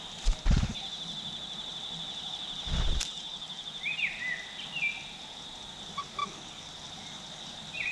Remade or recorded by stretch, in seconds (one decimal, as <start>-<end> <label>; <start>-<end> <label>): 0.0-7.9 recorded